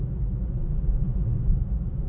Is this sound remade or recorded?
recorded